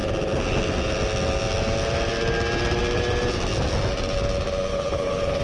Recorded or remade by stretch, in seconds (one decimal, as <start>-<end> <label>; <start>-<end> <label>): 0.0-4.7 recorded; 4.7-5.4 remade